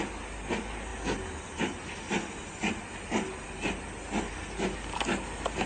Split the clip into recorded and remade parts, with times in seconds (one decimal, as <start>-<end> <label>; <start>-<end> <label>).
0.0-5.7 recorded